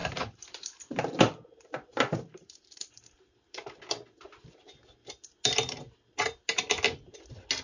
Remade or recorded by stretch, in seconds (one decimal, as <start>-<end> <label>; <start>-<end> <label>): 0.0-3.8 remade; 3.8-7.6 recorded